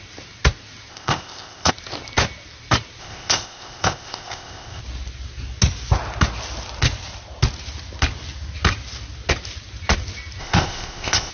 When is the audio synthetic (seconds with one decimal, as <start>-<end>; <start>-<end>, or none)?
0.9-1.7; 3.0-4.8; 10.4-11.3